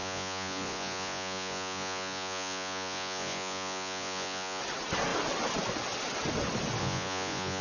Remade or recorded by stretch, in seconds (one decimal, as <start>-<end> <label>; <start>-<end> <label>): 0.0-4.6 remade; 4.6-6.8 recorded; 6.8-7.6 remade